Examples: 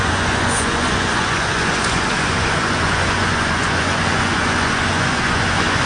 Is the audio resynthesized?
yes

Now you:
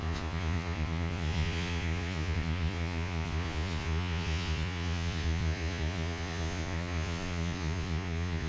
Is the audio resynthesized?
yes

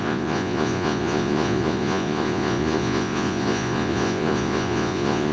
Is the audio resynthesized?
yes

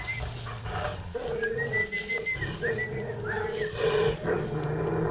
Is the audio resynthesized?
no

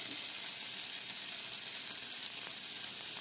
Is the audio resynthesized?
no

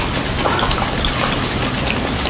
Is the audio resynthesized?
no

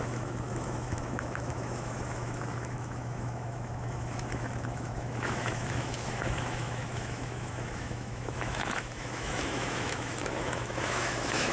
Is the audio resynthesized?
yes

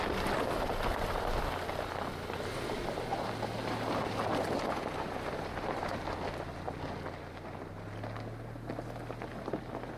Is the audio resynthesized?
no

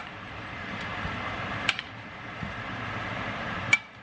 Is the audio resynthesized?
yes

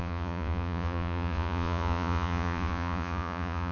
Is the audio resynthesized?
yes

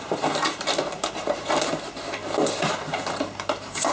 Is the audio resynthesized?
yes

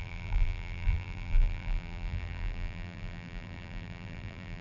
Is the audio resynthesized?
yes